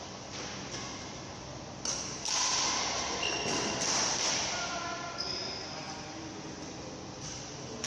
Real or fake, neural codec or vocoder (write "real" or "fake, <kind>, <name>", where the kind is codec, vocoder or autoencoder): real